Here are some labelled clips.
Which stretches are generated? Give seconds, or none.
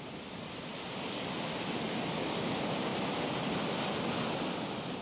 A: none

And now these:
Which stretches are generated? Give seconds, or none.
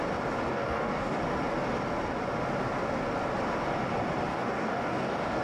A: 0.5-1.2 (codec, DAC); 4.3-5.4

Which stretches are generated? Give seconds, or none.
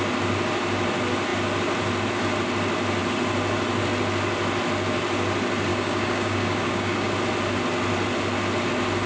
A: 5.7-7.1 (codec, DAC)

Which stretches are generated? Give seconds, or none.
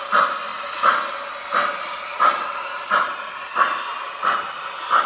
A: none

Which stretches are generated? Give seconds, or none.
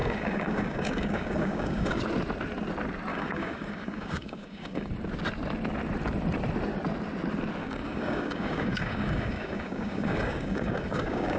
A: 0.0-2.0 (codec, DAC); 3.1-4.9; 7.6-11.4